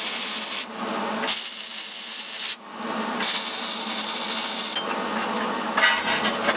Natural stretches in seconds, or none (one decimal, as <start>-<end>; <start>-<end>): 0.0-6.6